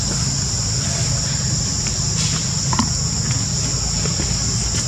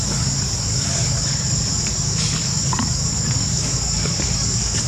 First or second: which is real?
first